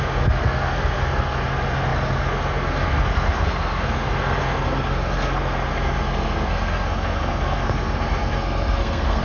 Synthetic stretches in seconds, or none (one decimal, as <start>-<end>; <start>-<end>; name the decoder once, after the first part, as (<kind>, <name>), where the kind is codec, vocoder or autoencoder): 0.0-9.2 (codec, SNAC)